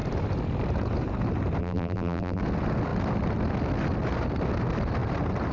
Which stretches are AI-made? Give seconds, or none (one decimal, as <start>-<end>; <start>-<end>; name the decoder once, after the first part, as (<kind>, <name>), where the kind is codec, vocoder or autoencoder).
1.6-2.4 (vocoder, BigVGAN v2)